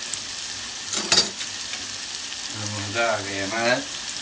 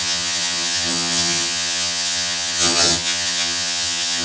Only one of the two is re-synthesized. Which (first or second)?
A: second